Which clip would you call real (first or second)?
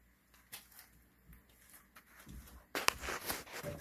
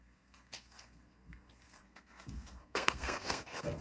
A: first